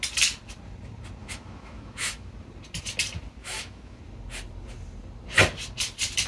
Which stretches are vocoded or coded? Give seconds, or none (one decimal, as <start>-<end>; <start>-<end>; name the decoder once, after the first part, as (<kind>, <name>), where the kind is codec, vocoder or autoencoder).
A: 1.2-2.3 (autoencoder, DAC-VAE); 3.4-4.0